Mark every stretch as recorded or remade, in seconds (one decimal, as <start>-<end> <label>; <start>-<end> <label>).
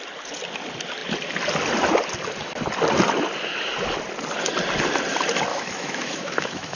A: 0.0-5.5 recorded; 5.5-6.8 remade